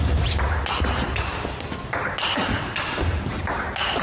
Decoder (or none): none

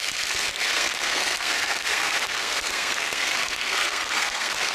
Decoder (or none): codec, SNAC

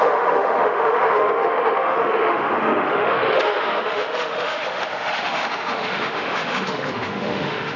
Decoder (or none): autoencoder, DAC-VAE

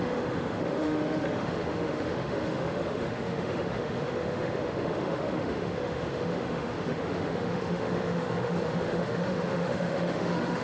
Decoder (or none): autoencoder, DAC-VAE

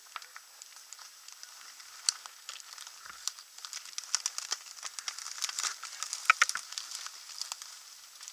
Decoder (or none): none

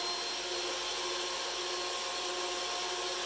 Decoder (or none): none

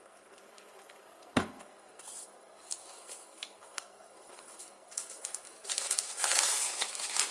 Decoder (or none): codec, SNAC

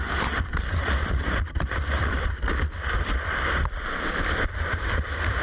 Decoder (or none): vocoder, BigVGAN v2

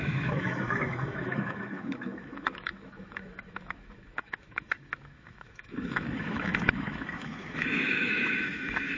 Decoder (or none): autoencoder, DAC-VAE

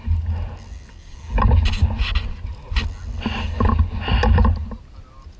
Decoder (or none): none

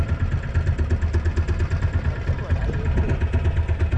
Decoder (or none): none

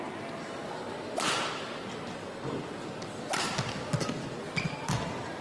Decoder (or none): none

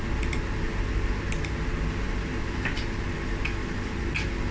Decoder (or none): none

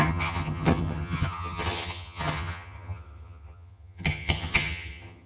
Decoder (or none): vocoder, HiFi-GAN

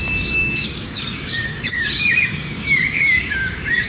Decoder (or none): codec, DAC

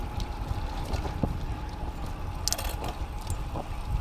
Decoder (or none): none